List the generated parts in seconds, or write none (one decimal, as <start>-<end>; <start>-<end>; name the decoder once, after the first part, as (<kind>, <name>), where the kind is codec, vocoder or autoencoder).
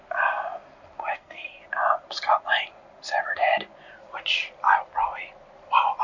1.1-1.6 (codec, SNAC)